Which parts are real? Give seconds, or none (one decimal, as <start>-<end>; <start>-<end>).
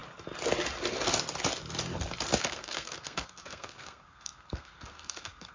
0.0-2.4